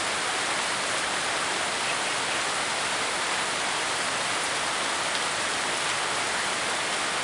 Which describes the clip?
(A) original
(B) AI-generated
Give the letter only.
A